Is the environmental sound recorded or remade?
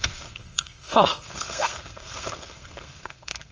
remade